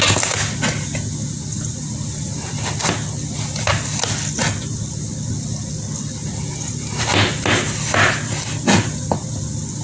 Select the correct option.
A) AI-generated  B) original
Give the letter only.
B